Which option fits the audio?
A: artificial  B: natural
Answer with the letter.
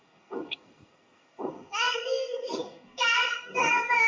A